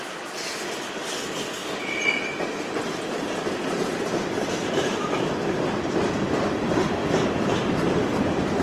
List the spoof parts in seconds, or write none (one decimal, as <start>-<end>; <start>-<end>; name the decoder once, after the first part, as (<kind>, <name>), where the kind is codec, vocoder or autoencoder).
0.0-7.0 (vocoder, BigVGAN v2)